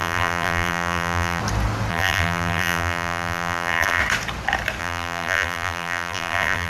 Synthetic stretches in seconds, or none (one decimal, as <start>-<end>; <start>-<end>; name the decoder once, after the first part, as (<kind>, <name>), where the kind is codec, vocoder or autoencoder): 0.0-1.4 (vocoder, BigVGAN v2); 1.9-4.0; 4.8-6.7